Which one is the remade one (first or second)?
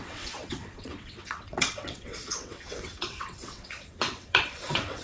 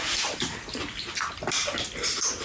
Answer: first